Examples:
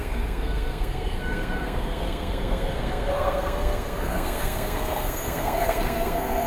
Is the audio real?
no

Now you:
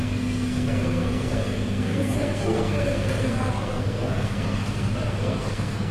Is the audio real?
no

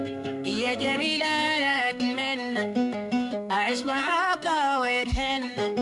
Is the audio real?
no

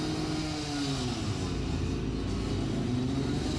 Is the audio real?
yes